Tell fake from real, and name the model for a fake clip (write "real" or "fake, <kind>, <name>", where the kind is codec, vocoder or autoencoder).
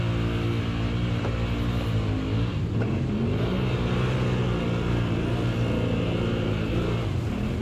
real